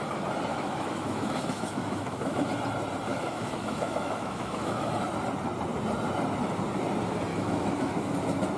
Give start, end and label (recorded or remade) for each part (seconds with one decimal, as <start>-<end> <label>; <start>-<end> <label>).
0.0-0.5 recorded; 0.5-2.5 remade; 2.5-3.1 recorded; 3.1-4.9 remade; 4.9-7.3 recorded; 7.3-8.1 remade; 8.1-8.6 recorded